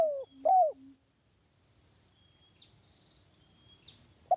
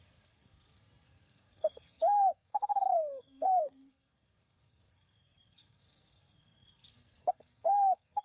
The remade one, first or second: second